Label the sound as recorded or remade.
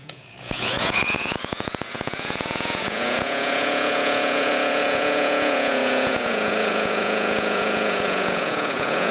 remade